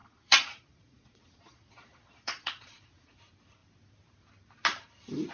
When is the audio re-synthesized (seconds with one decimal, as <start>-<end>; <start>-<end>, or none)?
0.0-3.2